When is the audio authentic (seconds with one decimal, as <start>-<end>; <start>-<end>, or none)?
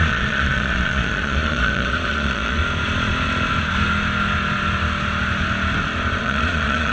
2.6-6.2